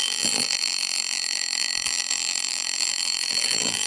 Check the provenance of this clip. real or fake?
fake